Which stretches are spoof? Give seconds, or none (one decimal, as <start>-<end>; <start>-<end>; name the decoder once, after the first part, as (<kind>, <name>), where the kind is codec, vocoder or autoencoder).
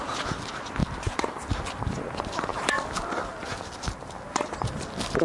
none